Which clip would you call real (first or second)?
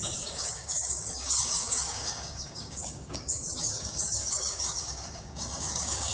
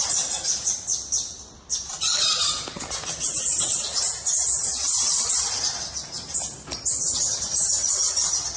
second